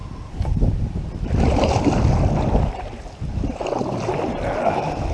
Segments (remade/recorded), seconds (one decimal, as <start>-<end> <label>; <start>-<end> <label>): 0.0-5.1 recorded